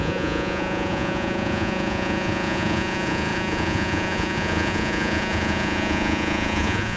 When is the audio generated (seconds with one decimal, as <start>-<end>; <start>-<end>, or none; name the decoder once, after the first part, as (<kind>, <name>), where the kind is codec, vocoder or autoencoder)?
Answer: 0.0-7.0 (vocoder, Vocos)